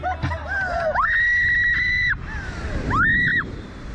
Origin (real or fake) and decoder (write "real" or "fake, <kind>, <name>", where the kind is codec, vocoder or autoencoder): real